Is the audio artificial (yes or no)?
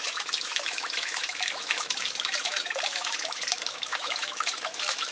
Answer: yes